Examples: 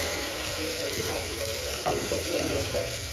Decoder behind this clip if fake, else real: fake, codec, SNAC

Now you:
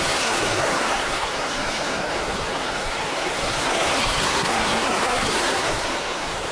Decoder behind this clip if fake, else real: fake, codec, SNAC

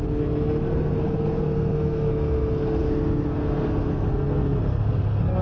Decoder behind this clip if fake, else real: fake, codec, SNAC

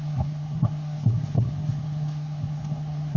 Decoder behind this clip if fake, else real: fake, codec, SNAC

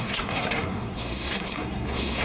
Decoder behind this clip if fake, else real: fake, codec, SNAC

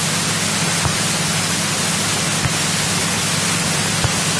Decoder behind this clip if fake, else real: real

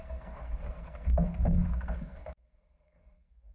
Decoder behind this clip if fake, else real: fake, codec, SNAC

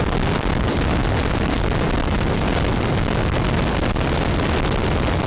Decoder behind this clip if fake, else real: real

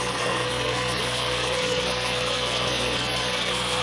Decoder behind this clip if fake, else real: fake, codec, SNAC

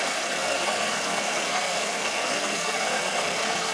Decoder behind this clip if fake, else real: fake, codec, SNAC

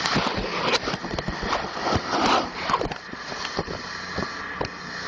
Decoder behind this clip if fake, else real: real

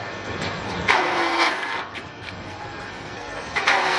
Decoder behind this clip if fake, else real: fake, codec, SNAC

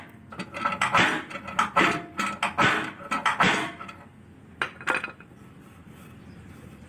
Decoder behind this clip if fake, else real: real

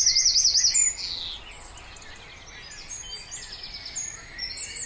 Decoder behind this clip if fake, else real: real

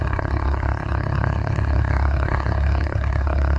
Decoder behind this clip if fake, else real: fake, codec, SNAC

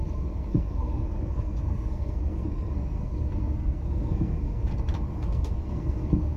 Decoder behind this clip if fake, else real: fake, codec, SNAC